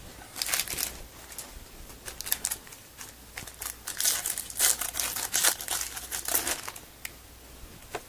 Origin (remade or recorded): recorded